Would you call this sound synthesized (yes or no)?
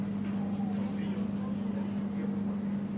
no